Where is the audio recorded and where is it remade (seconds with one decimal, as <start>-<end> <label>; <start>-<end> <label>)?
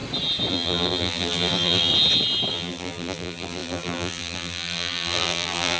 0.0-0.5 recorded; 0.5-1.9 remade; 1.9-2.5 recorded; 2.5-5.8 remade